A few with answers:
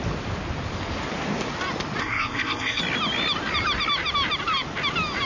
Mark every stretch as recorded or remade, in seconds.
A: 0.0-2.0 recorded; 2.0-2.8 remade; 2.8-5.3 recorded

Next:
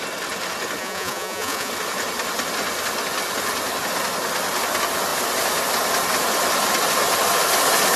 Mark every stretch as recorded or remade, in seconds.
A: 0.0-0.8 recorded; 0.8-1.7 remade; 1.7-8.0 recorded

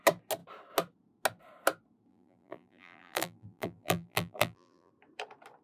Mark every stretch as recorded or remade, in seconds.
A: 0.0-2.1 recorded; 2.1-4.9 remade; 4.9-5.6 recorded

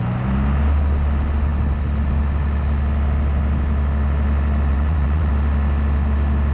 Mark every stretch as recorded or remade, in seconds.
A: 0.0-4.7 recorded; 4.7-5.3 remade; 5.3-6.5 recorded